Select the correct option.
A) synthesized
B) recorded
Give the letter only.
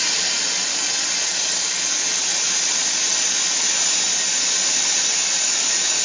B